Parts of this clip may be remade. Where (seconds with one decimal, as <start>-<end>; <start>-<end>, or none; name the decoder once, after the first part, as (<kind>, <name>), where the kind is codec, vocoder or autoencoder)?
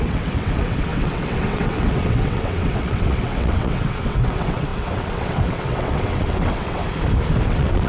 0.0-6.8 (vocoder, WaveNeXt); 7.5-7.9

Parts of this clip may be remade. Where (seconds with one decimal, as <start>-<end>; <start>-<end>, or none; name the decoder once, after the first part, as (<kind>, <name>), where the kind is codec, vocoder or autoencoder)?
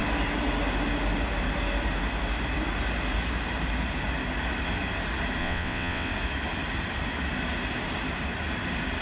5.4-6.1 (vocoder, WaveNeXt)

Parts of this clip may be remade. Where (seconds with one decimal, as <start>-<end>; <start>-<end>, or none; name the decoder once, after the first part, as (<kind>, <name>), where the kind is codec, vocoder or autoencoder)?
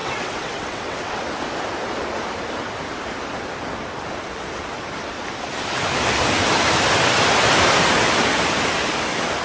0.0-1.2 (vocoder, WaveNeXt)